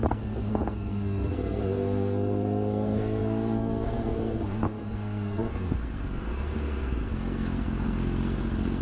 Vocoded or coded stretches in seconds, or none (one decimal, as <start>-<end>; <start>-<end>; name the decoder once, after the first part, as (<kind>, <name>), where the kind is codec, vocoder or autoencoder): 0.0-8.8 (codec, SNAC)